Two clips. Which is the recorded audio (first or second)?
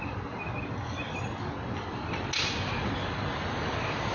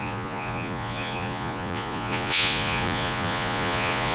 first